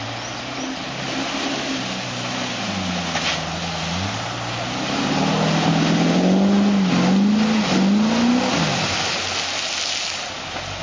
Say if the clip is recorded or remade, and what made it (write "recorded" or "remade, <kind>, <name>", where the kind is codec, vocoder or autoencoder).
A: recorded